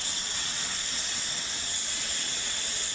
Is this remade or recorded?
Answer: remade